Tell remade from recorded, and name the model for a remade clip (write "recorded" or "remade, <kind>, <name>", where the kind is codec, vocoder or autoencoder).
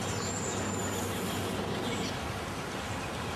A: recorded